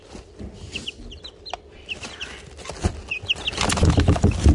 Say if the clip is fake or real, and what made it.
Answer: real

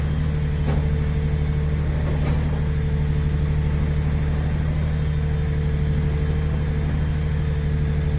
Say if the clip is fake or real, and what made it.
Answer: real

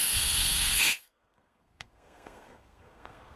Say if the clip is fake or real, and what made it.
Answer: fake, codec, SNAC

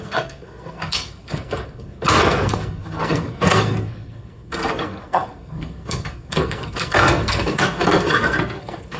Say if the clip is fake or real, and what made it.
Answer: fake, codec, SNAC